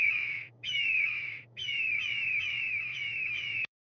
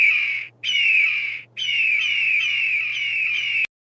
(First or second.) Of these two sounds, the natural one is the second